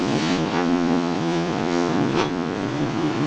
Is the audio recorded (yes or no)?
no